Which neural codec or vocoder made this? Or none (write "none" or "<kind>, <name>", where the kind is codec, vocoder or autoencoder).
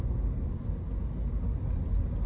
none